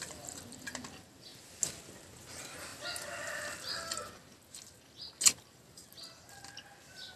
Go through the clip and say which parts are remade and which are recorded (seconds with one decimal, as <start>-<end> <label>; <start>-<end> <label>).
0.0-7.2 recorded

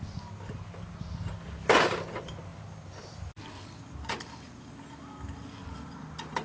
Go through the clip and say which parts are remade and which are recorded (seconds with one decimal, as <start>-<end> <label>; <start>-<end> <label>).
0.0-6.4 recorded